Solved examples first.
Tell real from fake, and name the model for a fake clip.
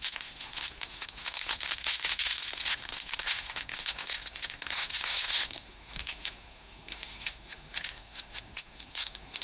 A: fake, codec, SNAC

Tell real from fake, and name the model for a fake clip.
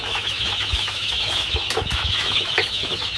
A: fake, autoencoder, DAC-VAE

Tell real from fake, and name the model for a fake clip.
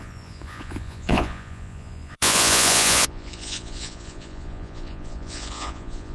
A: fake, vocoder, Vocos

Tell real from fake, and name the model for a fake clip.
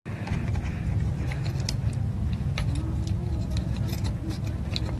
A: real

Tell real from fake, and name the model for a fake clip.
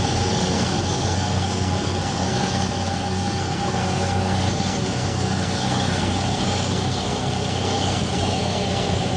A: fake, codec, SNAC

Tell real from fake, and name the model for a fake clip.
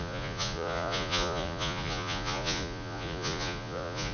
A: fake, vocoder, Vocos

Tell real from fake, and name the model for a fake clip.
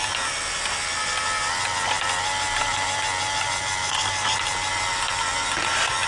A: real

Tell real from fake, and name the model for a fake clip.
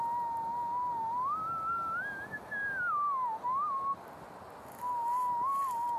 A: real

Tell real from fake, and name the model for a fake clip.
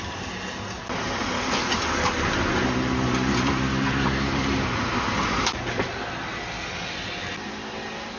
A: real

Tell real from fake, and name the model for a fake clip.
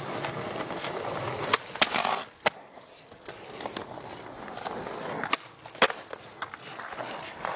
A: real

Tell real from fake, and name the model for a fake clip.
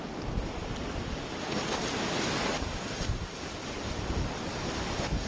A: real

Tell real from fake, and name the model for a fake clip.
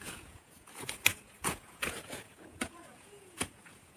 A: fake, vocoder, Vocos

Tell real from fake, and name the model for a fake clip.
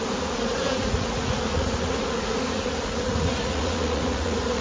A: fake, vocoder, Vocos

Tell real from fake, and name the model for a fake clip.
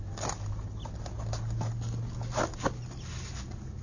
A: real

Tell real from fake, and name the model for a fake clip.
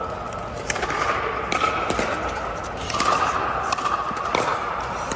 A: real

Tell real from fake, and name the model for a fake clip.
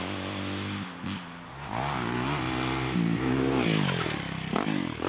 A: real